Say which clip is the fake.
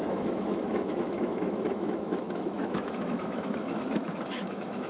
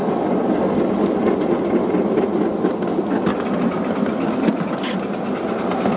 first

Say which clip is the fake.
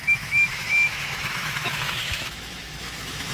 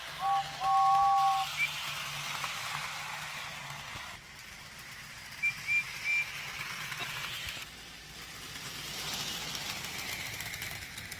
first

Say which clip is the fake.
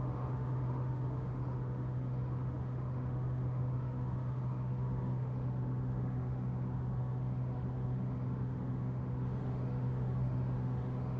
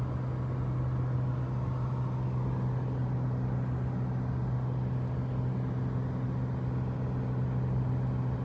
first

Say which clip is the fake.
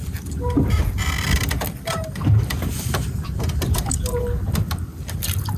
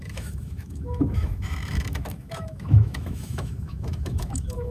second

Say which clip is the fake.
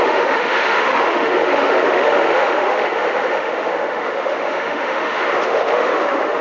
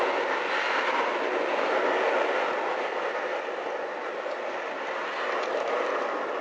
first